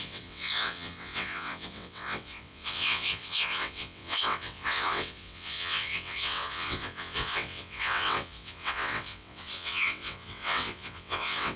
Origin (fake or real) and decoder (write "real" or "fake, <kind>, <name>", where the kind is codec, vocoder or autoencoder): fake, vocoder, WaveNeXt